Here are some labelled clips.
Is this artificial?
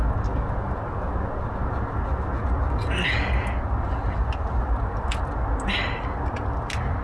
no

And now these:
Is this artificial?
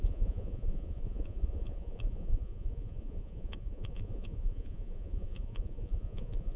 yes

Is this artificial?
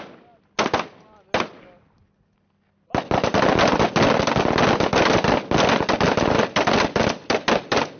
no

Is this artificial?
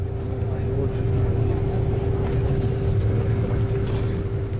no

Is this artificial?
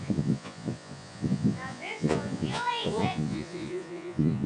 yes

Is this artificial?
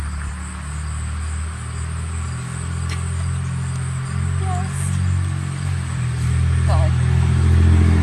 no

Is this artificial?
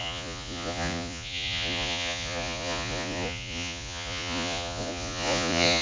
yes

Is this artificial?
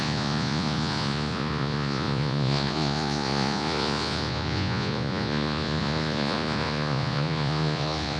yes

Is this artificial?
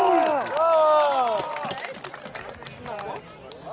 no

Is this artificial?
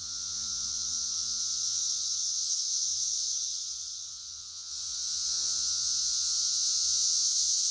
yes